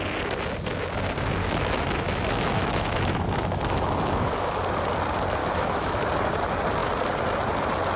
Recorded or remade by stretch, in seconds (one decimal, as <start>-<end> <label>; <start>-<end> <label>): 0.0-1.4 recorded; 1.4-4.6 remade; 4.6-5.4 recorded; 5.4-6.1 remade; 6.1-8.0 recorded